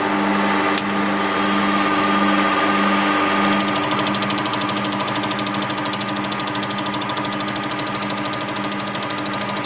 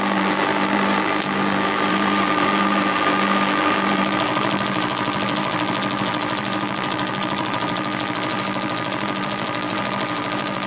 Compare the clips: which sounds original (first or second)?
first